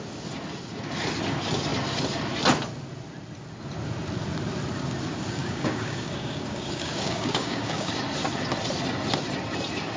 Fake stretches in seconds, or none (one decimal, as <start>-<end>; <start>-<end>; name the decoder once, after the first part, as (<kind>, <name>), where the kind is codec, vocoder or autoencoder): 5.4-7.9 (codec, DAC)